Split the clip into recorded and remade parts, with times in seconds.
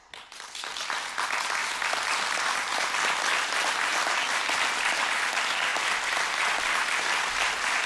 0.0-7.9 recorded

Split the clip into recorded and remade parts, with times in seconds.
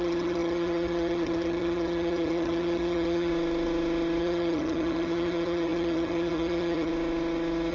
0.0-3.3 remade; 3.3-4.2 recorded; 4.2-6.9 remade; 6.9-7.7 recorded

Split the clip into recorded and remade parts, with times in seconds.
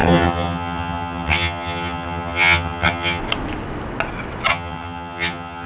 0.0-3.2 remade; 3.2-4.5 recorded; 4.5-5.7 remade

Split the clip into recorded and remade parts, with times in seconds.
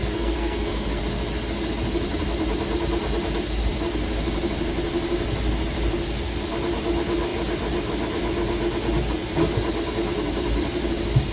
0.0-1.0 remade; 1.0-11.3 recorded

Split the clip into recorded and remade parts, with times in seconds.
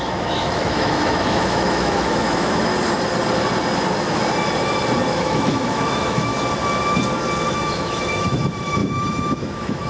0.0-2.7 remade; 2.7-5.1 recorded; 5.1-6.3 remade; 6.3-7.5 recorded; 7.5-9.9 remade